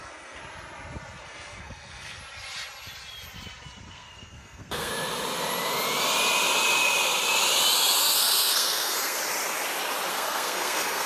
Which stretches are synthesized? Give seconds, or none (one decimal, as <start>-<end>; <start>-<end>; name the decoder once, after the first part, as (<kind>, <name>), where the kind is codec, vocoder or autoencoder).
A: 0.0-0.4 (codec, SNAC); 1.2-2.2; 3.9-4.9; 8.0-9.2; 10.1-11.1